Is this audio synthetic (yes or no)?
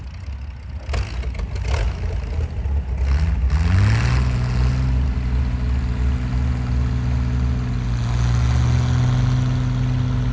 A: no